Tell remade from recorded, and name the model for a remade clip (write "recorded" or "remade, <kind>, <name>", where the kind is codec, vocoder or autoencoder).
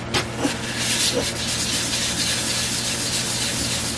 recorded